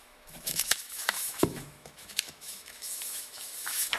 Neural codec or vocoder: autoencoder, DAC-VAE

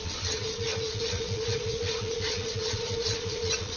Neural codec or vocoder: vocoder, Vocos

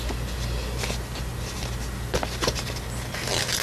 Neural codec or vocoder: none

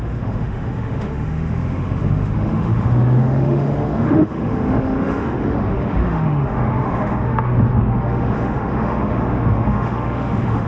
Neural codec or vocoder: autoencoder, DAC-VAE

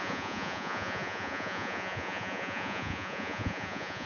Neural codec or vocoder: vocoder, Vocos